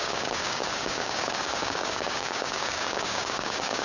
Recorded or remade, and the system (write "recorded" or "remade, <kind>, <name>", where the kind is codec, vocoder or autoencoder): remade, codec, DAC